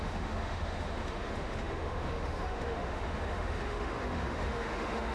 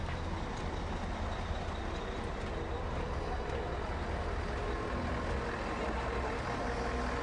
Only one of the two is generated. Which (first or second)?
first